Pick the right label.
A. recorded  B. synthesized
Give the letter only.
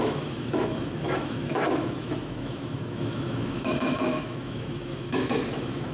B